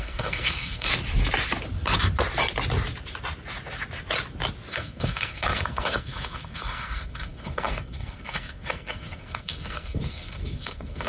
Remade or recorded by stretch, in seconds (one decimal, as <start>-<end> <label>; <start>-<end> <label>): 0.0-0.9 remade; 0.9-4.7 recorded; 4.7-11.1 remade